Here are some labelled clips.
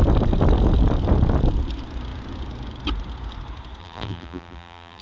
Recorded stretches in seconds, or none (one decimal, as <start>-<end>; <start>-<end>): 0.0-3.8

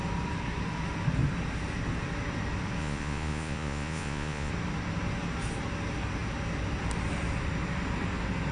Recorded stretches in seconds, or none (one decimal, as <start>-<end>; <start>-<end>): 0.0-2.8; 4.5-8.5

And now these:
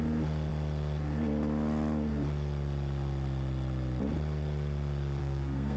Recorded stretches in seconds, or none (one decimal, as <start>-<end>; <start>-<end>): 0.0-5.2